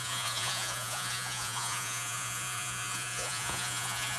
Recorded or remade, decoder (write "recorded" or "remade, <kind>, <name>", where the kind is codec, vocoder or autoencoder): remade, vocoder, Vocos